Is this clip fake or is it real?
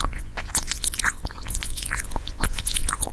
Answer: fake